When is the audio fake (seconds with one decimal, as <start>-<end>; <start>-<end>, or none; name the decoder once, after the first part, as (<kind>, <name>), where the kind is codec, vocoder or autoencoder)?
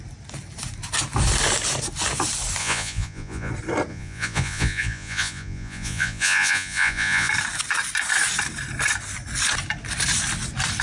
2.6-3.5 (vocoder, Vocos); 3.9-7.3